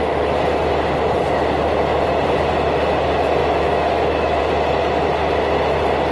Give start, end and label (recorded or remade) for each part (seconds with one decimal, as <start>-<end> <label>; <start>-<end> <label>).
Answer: 0.0-3.4 recorded; 3.4-4.4 remade; 4.4-6.1 recorded